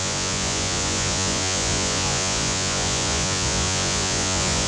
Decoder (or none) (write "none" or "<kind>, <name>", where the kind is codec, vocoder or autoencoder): vocoder, Vocos